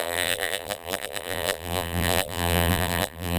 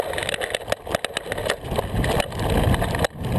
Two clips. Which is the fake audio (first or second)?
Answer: first